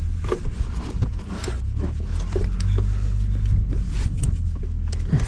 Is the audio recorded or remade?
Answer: recorded